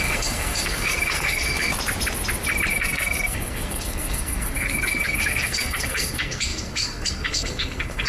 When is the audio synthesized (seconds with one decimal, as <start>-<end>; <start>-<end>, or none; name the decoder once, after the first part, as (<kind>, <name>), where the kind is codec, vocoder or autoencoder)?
0.0-1.7 (codec, SNAC); 2.7-8.1